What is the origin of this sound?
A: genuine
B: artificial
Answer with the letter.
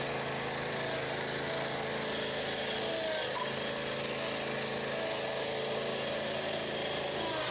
A